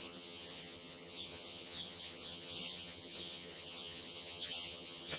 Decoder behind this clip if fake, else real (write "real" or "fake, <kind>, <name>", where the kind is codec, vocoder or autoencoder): fake, vocoder, HiFi-GAN